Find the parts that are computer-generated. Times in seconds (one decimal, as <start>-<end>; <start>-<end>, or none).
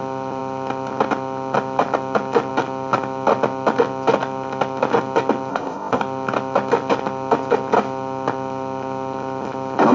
5.5-6.0